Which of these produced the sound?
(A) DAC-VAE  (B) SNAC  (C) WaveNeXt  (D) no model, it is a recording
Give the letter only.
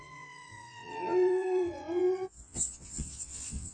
C